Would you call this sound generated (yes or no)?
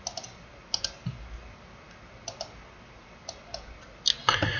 no